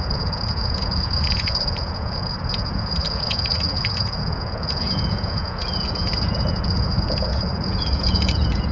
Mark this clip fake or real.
fake